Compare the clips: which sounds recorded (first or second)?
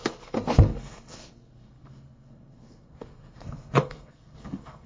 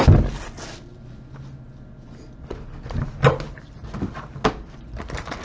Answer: second